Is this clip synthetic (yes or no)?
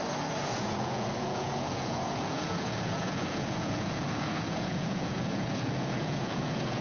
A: yes